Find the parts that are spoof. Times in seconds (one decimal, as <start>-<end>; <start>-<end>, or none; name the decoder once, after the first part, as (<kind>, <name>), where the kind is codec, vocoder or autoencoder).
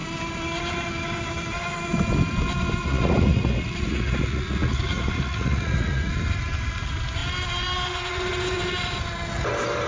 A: 2.8-6.1 (vocoder, Vocos)